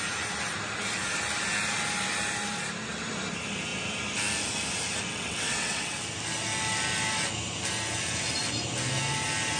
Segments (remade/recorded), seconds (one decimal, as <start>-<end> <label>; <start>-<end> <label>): 0.0-5.1 recorded; 5.1-6.0 remade; 6.0-9.6 recorded